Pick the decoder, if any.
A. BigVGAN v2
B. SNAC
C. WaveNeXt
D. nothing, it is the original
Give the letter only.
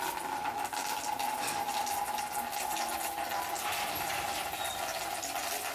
D